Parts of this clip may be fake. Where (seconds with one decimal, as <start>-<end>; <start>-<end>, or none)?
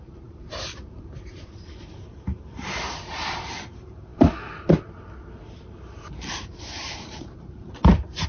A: 0.0-4.1; 5.6-8.3